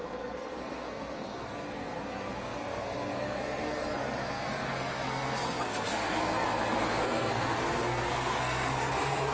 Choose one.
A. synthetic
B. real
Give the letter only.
A